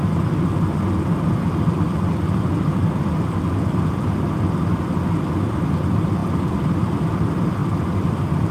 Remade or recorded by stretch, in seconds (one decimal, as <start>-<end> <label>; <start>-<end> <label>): 0.0-7.6 recorded; 7.6-8.5 remade